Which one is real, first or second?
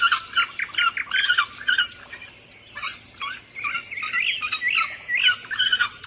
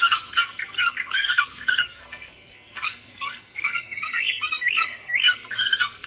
first